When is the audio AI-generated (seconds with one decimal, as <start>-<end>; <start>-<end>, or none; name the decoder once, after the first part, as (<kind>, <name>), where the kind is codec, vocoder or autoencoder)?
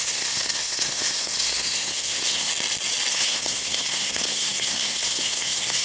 0.0-2.5 (codec, SNAC); 3.1-5.8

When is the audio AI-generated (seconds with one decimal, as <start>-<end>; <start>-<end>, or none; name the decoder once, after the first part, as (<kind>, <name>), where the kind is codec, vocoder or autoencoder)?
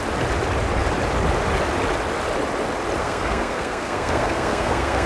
3.0-5.1 (codec, SNAC)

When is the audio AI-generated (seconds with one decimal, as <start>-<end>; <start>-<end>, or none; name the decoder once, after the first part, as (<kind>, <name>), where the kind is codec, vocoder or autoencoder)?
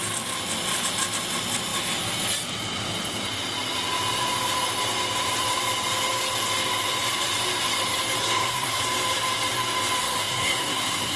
8.2-8.8 (codec, SNAC); 10.0-11.2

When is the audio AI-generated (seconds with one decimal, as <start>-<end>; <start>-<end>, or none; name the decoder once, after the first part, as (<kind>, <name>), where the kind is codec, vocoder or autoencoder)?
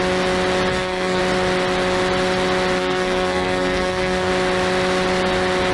0.7-1.2 (codec, SNAC); 2.8-4.3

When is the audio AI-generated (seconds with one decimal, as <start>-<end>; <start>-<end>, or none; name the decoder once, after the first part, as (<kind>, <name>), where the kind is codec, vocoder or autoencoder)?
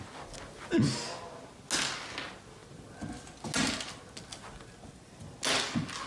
none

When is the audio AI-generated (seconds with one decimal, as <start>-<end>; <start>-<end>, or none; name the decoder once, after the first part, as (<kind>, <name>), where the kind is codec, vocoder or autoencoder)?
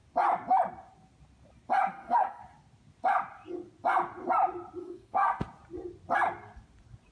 1.9-2.4 (codec, SNAC); 4.8-5.4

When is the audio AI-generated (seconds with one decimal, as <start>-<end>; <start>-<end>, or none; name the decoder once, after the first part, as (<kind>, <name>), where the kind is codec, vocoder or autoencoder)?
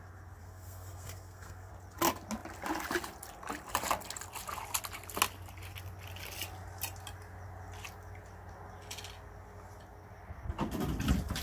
0.4-1.7 (codec, SNAC)